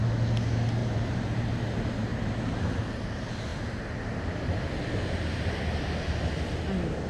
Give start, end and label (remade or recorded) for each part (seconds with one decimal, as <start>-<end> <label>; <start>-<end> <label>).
0.0-0.8 recorded; 0.8-1.6 remade; 1.6-2.1 recorded; 2.1-2.8 remade; 2.8-7.1 recorded